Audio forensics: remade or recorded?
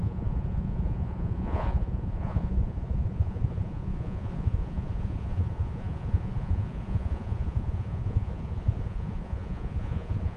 remade